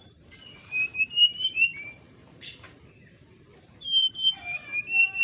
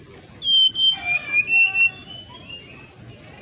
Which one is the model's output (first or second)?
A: first